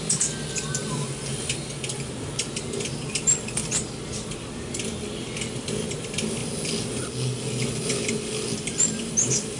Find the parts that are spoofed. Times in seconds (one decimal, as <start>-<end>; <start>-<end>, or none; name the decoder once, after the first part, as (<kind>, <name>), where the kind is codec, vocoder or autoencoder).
none